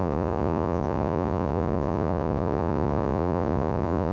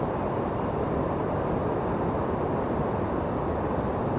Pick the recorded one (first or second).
second